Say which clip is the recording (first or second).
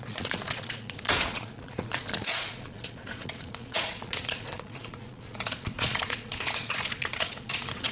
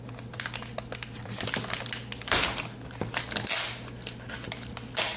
second